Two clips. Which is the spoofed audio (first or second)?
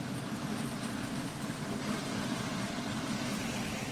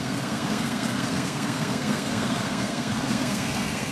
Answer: second